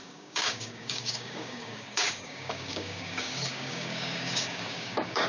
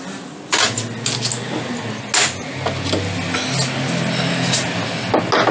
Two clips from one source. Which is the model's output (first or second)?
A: first